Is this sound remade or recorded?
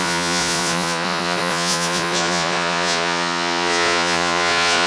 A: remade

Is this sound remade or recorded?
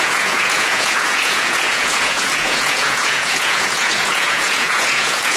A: remade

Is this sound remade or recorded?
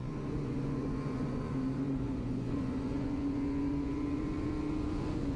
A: remade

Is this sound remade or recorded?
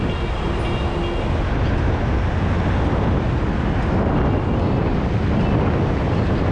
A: recorded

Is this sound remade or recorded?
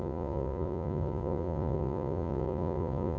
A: remade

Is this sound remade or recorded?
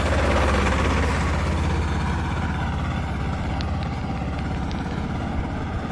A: recorded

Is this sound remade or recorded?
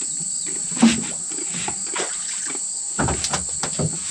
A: recorded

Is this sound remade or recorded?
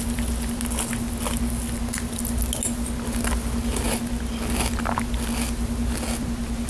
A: recorded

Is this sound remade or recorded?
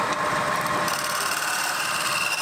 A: recorded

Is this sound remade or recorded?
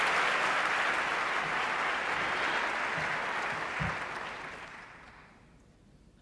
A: recorded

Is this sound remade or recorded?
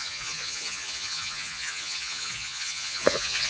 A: remade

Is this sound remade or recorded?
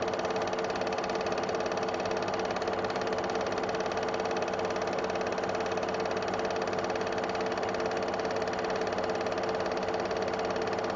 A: recorded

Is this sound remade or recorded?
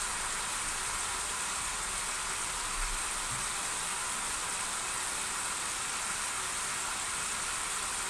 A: recorded